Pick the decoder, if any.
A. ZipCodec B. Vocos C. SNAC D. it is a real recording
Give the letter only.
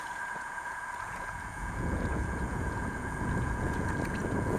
B